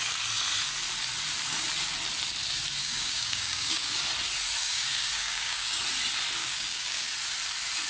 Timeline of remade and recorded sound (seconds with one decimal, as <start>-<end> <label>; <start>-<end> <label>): 0.0-2.8 recorded; 2.8-4.0 remade; 4.0-4.6 recorded; 4.6-5.8 remade; 5.8-6.4 recorded; 6.4-7.1 remade; 7.1-7.9 recorded